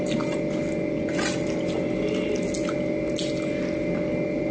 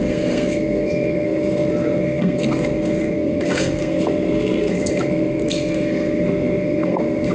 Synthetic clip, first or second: second